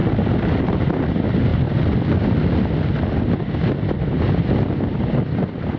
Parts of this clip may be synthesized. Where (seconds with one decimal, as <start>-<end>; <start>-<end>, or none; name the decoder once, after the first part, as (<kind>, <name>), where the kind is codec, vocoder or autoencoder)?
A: none